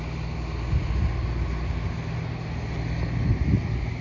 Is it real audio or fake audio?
real